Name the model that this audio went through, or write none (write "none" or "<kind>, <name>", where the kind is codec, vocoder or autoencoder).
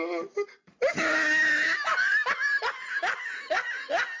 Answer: none